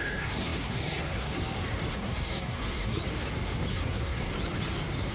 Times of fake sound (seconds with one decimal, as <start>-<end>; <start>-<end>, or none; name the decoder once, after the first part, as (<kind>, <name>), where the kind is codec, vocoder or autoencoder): 0.0-1.4 (codec, SNAC); 1.9-3.0; 3.7-4.3